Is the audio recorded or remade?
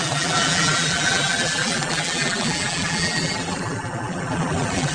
remade